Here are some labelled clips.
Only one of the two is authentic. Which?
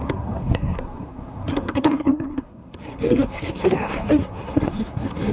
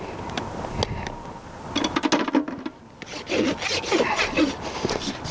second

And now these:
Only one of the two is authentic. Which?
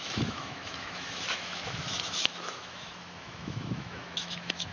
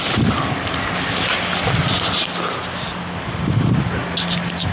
second